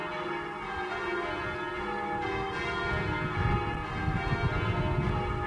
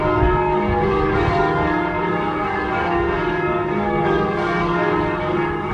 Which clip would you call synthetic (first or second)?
second